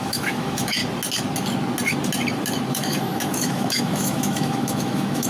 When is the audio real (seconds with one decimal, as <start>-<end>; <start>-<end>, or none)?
0.8-2.7